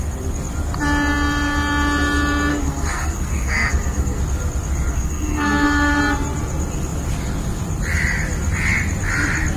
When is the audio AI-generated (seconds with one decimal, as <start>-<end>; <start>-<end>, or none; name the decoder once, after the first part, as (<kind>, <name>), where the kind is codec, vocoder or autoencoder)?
2.5-4.2 (codec, SNAC); 4.9-6.0